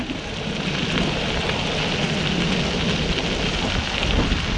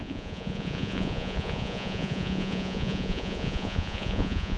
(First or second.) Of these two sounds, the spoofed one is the second